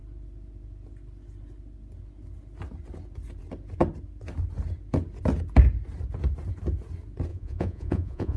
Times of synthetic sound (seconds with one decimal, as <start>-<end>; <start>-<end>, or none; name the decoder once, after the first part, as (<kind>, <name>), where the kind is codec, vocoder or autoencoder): 7.3-8.4 (vocoder, Vocos)

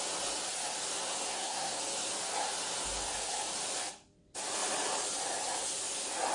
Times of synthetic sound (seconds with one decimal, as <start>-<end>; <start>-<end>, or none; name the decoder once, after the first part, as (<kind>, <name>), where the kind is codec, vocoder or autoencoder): 1.3-1.8 (codec, SNAC)